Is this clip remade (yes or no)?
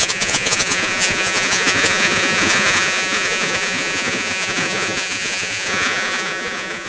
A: yes